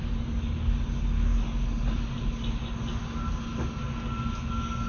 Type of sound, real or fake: real